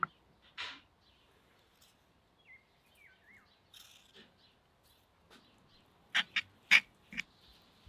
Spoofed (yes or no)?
no